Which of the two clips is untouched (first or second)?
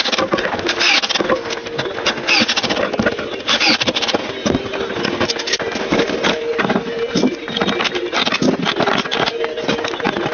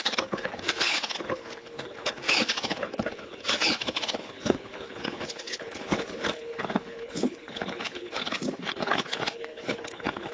first